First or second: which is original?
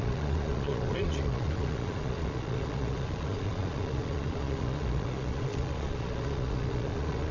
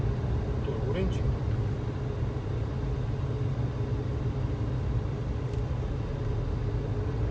second